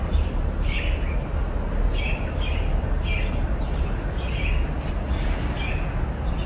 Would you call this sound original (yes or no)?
yes